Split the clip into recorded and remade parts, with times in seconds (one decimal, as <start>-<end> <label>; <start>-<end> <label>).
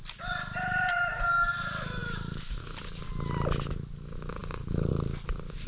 0.0-2.0 recorded; 2.0-2.6 remade; 2.6-4.4 recorded; 4.4-4.9 remade; 4.9-5.7 recorded